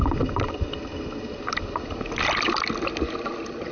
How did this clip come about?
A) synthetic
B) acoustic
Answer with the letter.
B